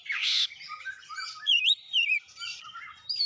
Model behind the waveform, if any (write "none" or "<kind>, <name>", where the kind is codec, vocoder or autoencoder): vocoder, BigVGAN v2